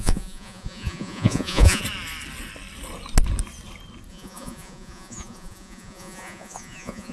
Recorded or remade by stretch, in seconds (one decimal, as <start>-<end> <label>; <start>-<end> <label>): 0.0-1.8 remade; 1.8-4.1 recorded; 4.1-7.1 remade